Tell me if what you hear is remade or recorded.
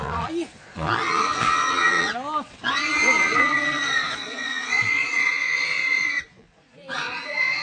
remade